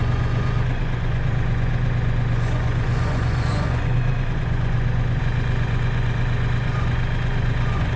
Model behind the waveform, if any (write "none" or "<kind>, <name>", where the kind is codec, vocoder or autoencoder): vocoder, Vocos